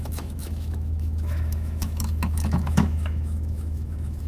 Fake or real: fake